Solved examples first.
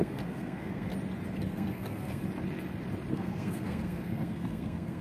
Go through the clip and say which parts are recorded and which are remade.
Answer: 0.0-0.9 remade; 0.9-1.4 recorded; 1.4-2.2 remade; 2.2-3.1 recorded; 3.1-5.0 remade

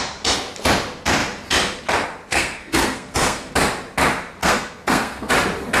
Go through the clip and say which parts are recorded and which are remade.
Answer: 0.0-2.3 recorded; 2.3-3.5 remade; 3.5-4.4 recorded; 4.4-5.3 remade; 5.3-5.8 recorded

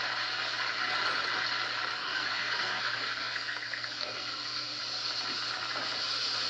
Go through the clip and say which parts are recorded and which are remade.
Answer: 0.0-1.9 recorded; 1.9-4.8 remade; 4.8-6.5 recorded